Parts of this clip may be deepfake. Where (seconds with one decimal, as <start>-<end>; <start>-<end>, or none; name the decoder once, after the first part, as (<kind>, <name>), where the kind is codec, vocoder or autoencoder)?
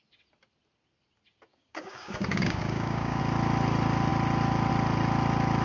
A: 1.5-3.2 (codec, DAC)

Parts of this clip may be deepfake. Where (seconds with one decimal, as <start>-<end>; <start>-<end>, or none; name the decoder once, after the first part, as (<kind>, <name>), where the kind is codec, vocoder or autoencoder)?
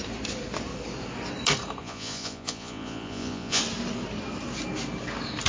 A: 1.8-3.6 (vocoder, Vocos)